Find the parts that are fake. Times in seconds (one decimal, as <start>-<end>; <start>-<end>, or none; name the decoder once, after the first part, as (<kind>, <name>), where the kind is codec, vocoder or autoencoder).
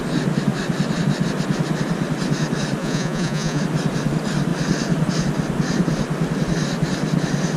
2.8-3.6 (vocoder, Vocos)